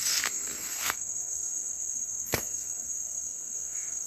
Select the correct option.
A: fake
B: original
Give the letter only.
A